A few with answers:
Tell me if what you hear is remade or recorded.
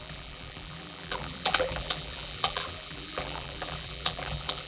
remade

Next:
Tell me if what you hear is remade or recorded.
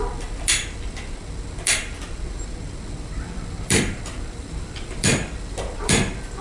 remade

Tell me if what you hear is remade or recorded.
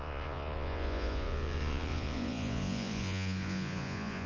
remade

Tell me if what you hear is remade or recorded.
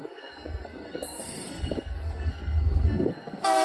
remade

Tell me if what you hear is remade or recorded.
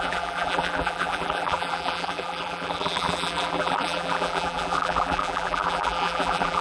remade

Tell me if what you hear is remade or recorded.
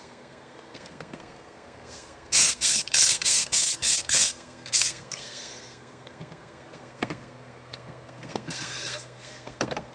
remade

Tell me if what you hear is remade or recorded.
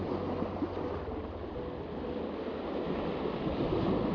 recorded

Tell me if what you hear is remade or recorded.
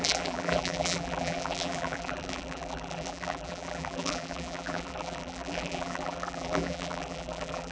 remade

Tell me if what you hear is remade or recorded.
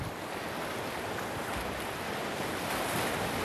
recorded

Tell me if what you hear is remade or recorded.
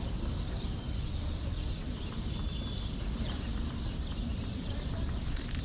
remade